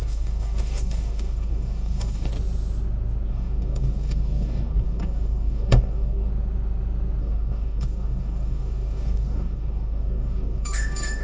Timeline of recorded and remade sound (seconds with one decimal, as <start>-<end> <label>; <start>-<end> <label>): 0.0-2.3 remade; 2.3-3.3 recorded; 3.3-6.3 remade; 6.3-7.2 recorded; 7.2-11.2 remade

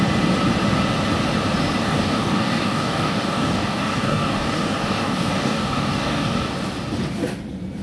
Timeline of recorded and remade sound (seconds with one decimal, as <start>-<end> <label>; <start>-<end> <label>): 0.0-1.8 recorded; 1.8-6.5 remade; 6.5-7.8 recorded

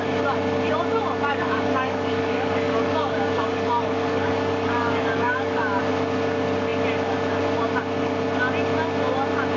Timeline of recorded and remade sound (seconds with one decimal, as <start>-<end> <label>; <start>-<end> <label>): 0.0-1.3 recorded; 1.3-5.8 remade; 5.8-9.6 recorded

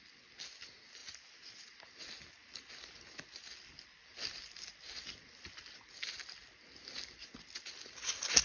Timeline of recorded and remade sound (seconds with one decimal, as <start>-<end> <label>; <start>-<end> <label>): 0.0-8.4 recorded

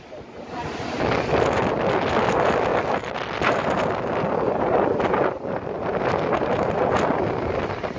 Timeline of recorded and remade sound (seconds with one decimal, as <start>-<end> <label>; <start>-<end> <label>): 0.0-8.0 recorded

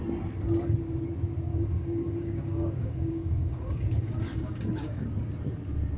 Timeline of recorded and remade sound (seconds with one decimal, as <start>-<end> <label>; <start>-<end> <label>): 0.0-1.5 recorded; 1.5-5.1 remade; 5.1-6.0 recorded

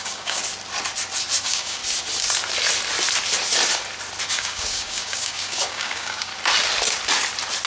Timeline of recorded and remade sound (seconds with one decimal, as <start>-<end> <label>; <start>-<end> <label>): 0.0-0.4 remade; 0.4-1.4 recorded; 1.4-1.8 remade; 1.8-4.3 recorded; 4.3-6.3 remade; 6.3-7.7 recorded

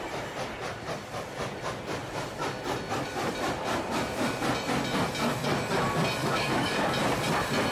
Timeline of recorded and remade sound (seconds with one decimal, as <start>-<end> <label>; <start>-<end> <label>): 0.0-6.2 recorded; 6.2-6.9 remade; 6.9-7.7 recorded